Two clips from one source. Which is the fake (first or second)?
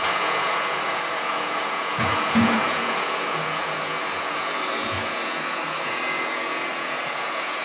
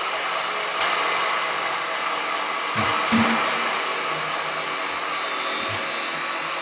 first